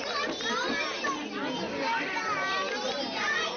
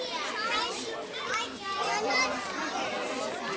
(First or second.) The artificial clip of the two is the second